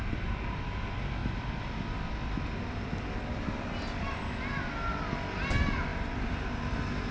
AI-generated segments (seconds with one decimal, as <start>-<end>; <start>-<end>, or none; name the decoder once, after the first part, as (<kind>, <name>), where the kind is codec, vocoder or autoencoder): 5.9-7.1 (vocoder, BigVGAN v2)